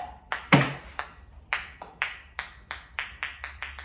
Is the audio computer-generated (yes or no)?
yes